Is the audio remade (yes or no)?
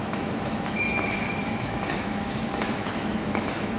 yes